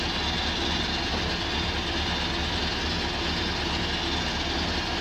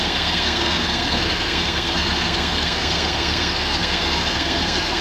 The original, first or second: first